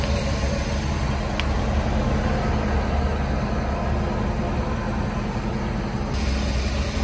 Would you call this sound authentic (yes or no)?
yes